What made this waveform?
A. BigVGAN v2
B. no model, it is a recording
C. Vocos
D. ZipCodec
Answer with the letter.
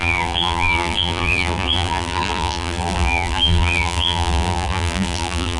A